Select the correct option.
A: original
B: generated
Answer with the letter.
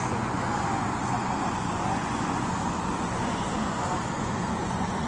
B